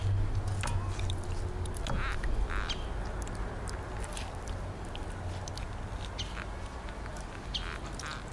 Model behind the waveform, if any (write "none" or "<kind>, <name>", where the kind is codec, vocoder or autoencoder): none